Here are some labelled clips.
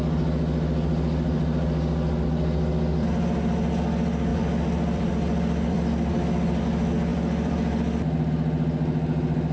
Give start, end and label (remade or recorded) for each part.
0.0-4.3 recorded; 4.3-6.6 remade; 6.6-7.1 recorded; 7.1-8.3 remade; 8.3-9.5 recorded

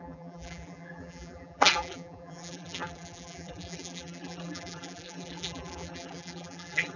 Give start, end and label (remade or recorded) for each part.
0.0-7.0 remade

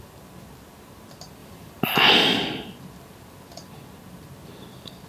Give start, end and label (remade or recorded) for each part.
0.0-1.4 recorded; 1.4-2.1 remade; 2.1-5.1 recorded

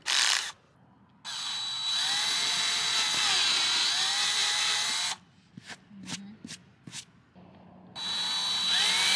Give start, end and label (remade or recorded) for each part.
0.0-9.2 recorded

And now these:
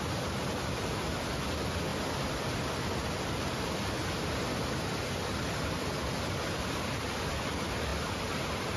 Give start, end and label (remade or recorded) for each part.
0.0-8.8 recorded